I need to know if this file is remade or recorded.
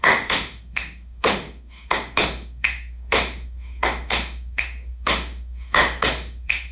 remade